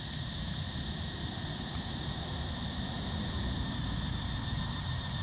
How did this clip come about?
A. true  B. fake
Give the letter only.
A